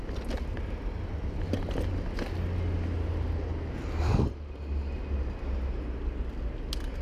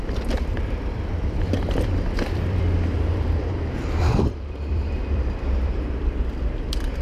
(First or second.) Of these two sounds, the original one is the first